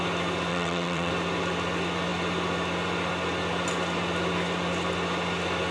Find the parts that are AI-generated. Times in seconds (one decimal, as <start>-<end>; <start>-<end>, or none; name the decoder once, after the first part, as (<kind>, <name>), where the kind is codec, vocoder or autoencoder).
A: 0.5-1.1 (vocoder, WaveNeXt)